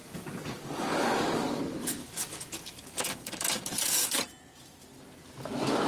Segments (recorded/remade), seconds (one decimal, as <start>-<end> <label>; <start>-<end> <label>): 0.0-1.6 remade; 1.6-2.0 recorded; 2.0-4.2 remade; 4.2-5.9 recorded